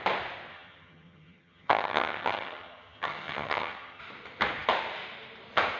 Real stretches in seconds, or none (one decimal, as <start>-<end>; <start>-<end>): 0.0-0.5; 4.0-5.8

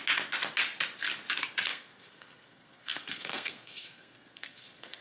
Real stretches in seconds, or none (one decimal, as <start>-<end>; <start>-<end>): 0.0-1.7

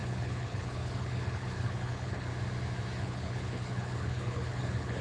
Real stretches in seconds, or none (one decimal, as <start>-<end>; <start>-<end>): 2.3-3.0

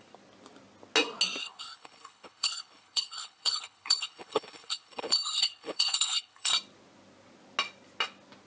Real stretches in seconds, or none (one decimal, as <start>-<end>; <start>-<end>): 0.0-1.4; 6.5-8.5

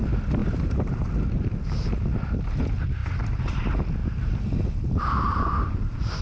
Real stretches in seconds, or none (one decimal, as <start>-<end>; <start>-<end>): 0.0-0.4; 1.2-3.0; 3.6-4.0

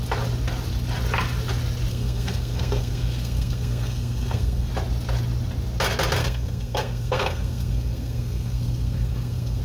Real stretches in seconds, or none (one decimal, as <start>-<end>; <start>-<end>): 0.0-1.9; 4.7-6.2

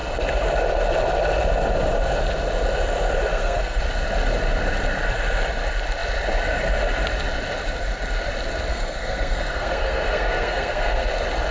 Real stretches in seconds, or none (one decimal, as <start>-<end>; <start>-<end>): 0.0-3.3; 3.8-8.7; 11.1-11.5

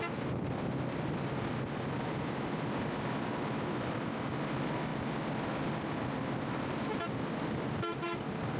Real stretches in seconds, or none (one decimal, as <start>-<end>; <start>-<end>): 0.0-8.6